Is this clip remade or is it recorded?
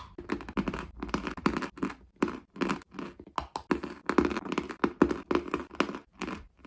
recorded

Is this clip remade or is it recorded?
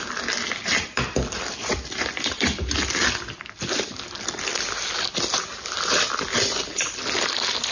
recorded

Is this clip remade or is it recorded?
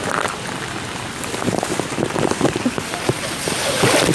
recorded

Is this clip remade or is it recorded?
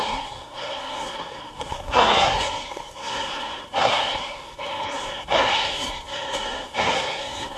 remade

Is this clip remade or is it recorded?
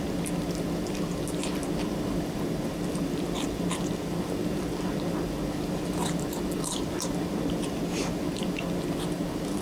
recorded